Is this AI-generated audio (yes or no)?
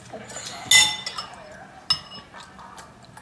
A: no